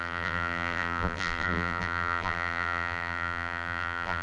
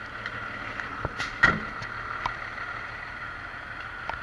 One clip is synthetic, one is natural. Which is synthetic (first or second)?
first